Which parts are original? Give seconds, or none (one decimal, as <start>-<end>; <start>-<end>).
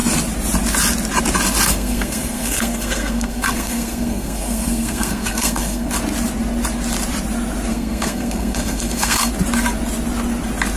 0.0-1.7; 5.9-7.7; 9.3-10.8